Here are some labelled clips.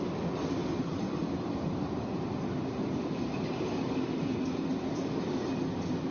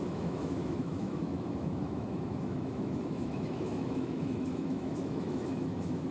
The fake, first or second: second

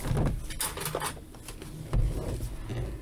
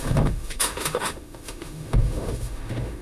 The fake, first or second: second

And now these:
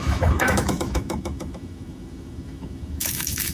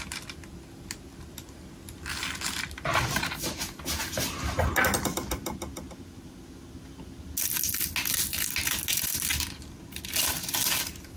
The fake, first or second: first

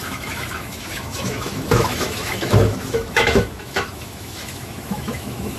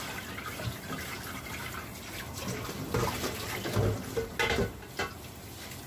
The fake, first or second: first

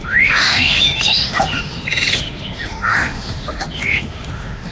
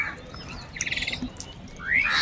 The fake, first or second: first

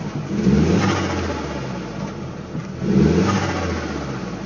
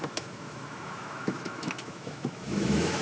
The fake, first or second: second